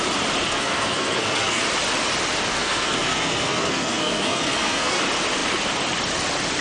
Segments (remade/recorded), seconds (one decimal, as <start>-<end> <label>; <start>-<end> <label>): 0.0-0.5 recorded; 0.5-1.6 remade; 1.6-2.5 recorded; 2.5-5.0 remade; 5.0-6.6 recorded